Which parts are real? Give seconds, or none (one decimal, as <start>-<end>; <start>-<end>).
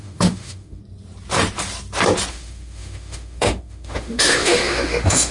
0.8-2.3